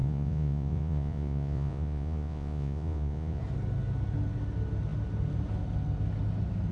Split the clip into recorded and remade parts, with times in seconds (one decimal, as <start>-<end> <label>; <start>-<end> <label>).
0.0-3.4 remade; 3.4-6.7 recorded